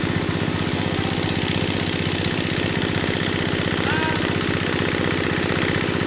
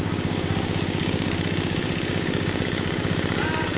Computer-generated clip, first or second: second